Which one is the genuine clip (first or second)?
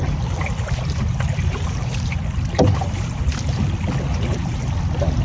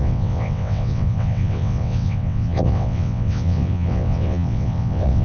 first